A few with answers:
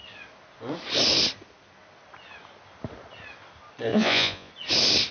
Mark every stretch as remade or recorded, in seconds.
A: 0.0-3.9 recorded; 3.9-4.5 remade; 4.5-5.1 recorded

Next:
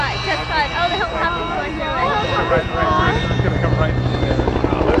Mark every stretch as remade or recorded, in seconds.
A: 0.0-2.3 recorded; 2.3-3.2 remade; 3.2-5.0 recorded

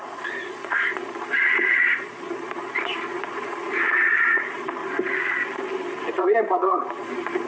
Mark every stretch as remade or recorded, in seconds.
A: 0.0-4.8 remade; 4.8-6.1 recorded; 6.1-7.5 remade

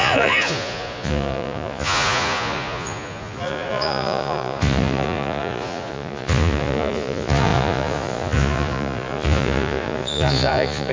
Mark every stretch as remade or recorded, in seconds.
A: 0.0-10.9 remade